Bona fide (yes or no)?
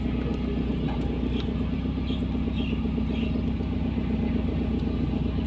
yes